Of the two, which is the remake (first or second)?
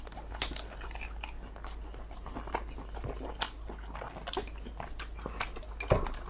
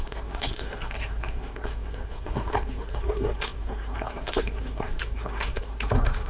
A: second